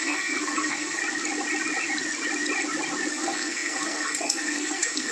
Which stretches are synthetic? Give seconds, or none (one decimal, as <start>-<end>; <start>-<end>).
0.0-1.0; 3.1-5.1